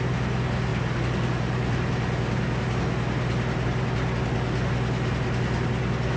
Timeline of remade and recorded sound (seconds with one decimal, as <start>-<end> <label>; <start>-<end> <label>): 0.0-6.2 recorded